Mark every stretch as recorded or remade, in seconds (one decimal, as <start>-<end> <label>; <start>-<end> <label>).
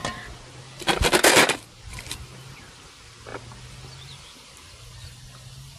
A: 0.0-5.8 recorded